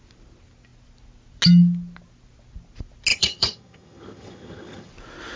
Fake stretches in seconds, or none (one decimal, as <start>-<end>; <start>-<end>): 3.1-4.9